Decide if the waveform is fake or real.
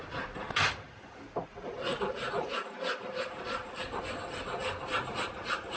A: real